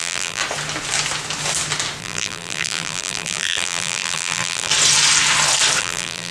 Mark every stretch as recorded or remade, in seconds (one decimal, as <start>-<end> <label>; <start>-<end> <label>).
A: 0.0-0.4 remade; 0.4-2.0 recorded; 2.0-4.7 remade; 4.7-5.8 recorded; 5.8-6.3 remade